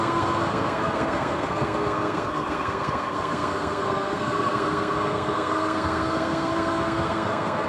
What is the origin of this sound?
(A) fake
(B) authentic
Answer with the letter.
A